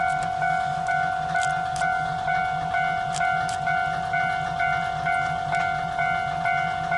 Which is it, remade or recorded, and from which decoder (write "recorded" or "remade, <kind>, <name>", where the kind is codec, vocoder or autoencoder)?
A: recorded